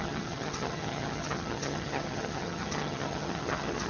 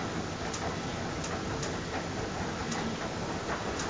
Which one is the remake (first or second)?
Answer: first